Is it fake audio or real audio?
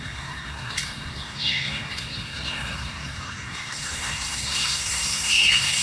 fake